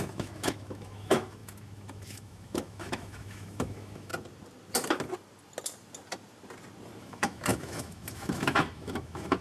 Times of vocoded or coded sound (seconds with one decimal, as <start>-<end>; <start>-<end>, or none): 0.0-4.1; 7.0-9.4